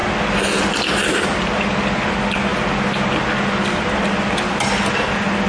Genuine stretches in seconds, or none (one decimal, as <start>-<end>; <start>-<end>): 0.0-5.5